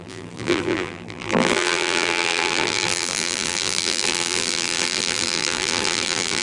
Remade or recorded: remade